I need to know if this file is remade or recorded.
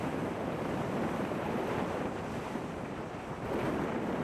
remade